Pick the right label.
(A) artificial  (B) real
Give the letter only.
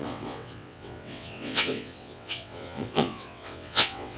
A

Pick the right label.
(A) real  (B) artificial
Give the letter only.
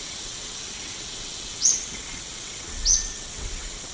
B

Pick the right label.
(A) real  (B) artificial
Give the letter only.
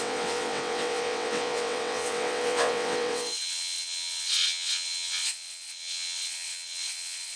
B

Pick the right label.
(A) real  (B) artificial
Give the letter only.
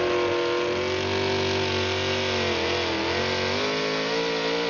A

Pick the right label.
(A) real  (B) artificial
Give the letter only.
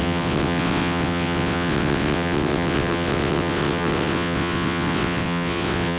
B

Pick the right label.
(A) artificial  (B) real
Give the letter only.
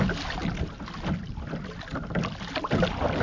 B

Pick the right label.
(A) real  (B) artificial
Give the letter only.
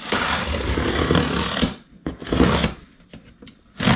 A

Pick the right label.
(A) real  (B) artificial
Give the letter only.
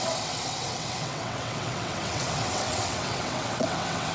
B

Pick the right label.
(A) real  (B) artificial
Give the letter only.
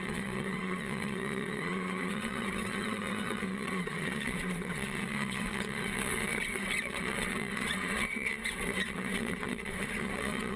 B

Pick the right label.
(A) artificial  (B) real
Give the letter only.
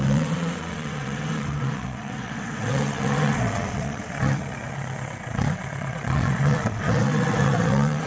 A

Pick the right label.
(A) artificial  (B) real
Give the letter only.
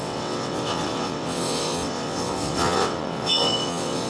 A